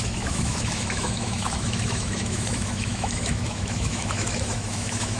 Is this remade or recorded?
remade